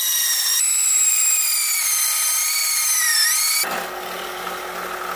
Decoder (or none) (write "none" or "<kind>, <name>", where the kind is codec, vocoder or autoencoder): none